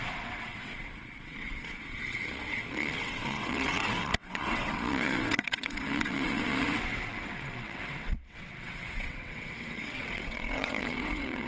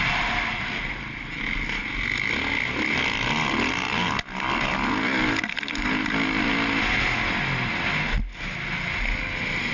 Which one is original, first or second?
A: second